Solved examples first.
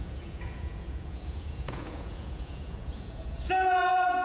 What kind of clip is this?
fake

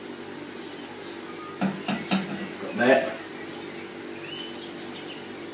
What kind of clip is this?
real